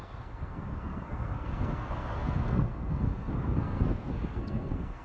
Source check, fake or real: fake